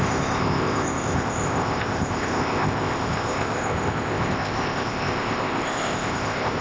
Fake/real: fake